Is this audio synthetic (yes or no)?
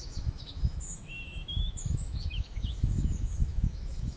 yes